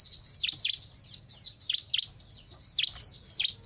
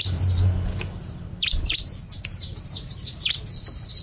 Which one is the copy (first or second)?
second